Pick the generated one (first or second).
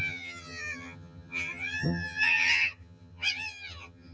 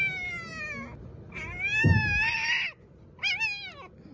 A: first